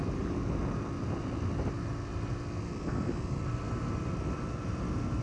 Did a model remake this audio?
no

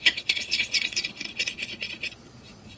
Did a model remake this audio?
yes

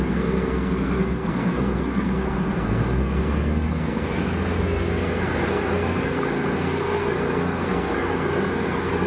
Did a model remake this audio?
yes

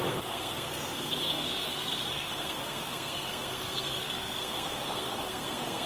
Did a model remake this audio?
yes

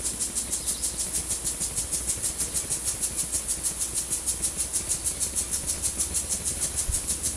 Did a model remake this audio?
no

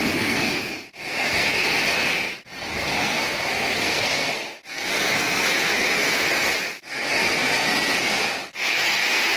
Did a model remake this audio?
yes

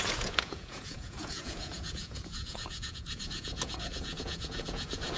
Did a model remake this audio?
yes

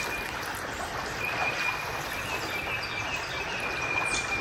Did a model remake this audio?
no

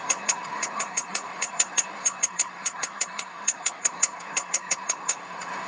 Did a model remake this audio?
yes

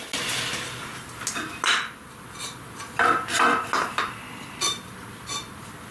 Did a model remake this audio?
no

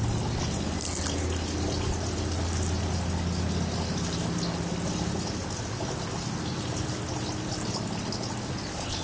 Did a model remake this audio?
no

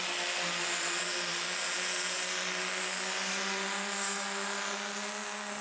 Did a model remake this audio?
no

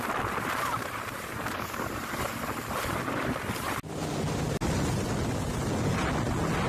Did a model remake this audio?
no